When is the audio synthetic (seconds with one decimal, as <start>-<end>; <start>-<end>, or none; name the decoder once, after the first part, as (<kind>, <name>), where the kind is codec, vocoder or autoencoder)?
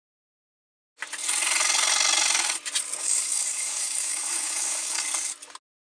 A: 3.0-5.0 (codec, DAC)